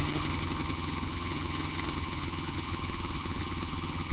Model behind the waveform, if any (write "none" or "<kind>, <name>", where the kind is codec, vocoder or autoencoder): vocoder, HiFi-GAN